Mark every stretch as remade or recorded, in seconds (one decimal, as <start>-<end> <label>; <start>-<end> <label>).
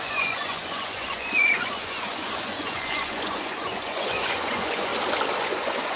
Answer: 0.0-4.9 remade; 4.9-5.4 recorded; 5.4-6.0 remade